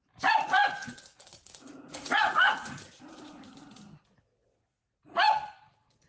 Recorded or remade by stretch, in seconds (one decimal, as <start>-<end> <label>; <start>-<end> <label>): 0.0-0.8 recorded; 0.8-3.5 remade; 3.5-6.1 recorded